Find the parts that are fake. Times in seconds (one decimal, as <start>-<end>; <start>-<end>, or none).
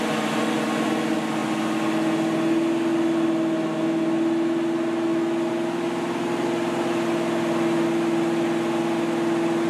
none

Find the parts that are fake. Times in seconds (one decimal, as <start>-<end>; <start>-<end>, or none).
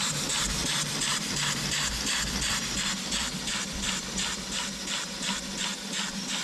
0.6-4.4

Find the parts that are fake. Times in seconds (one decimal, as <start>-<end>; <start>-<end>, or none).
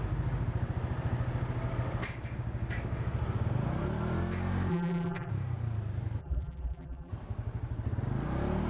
4.7-5.3; 6.2-7.1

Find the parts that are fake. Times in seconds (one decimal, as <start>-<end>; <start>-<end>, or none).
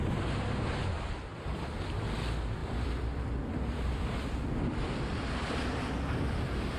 1.3-2.0; 2.6-6.8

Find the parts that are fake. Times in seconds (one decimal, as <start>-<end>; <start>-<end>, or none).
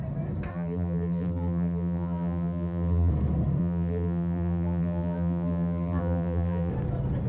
0.5-3.1; 3.6-6.7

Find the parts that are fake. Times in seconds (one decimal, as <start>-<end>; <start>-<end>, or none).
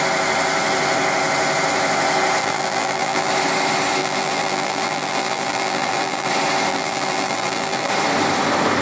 2.4-3.3; 4.0-6.3; 6.7-7.9